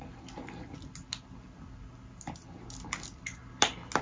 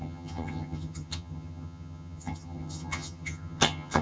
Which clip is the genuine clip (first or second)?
first